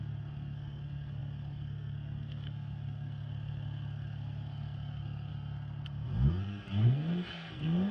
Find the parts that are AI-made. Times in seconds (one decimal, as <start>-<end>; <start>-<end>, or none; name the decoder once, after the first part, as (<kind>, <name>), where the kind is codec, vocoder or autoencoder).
0.0-7.9 (codec, SNAC)